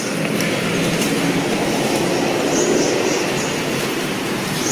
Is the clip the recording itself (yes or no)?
yes